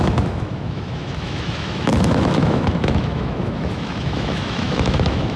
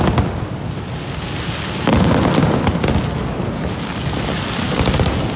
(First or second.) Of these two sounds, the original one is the second